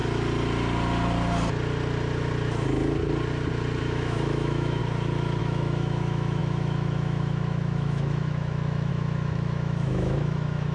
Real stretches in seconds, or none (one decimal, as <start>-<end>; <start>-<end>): 0.0-3.8; 4.8-5.4